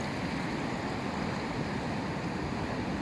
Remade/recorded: recorded